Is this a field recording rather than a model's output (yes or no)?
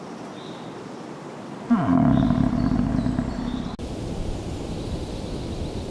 yes